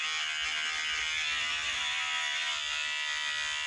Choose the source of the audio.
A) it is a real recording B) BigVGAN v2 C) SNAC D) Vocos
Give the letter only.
A